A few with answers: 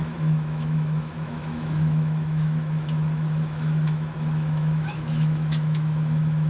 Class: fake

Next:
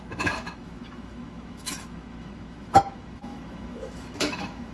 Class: fake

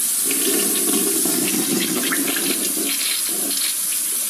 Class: real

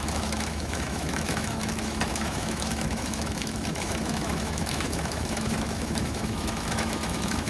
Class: fake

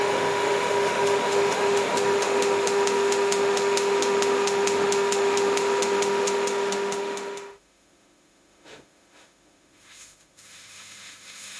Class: fake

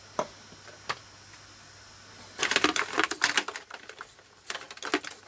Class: real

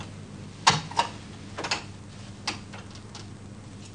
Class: real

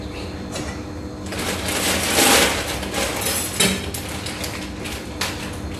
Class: real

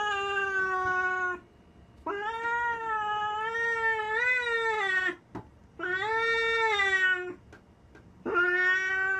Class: real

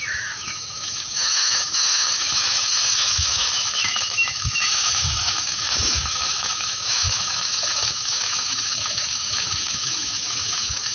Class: fake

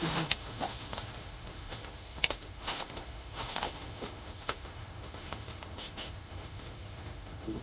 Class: fake